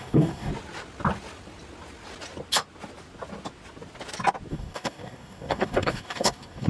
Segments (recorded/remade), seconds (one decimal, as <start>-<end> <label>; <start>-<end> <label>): 0.0-0.5 remade; 0.5-4.5 recorded; 4.5-6.7 remade